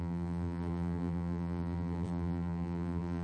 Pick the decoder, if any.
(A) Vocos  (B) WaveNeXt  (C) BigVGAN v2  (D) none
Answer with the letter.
C